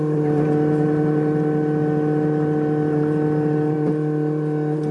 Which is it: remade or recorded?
recorded